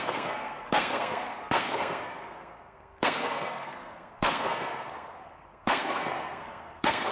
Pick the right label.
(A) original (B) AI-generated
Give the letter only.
B